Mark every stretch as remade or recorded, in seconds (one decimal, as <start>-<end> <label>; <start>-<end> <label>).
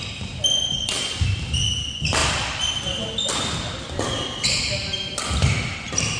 0.0-6.2 recorded